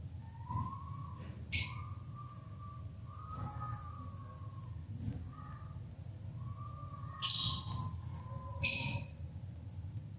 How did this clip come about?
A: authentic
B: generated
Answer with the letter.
A